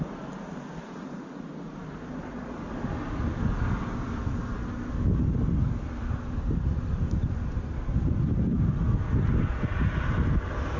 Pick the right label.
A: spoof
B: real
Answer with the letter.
B